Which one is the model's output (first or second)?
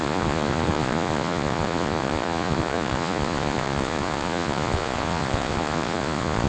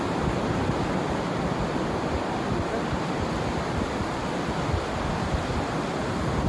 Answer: first